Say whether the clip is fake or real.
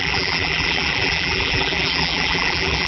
fake